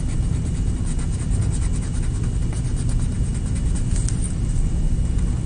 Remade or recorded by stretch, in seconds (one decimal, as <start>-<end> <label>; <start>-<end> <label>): 0.0-5.5 recorded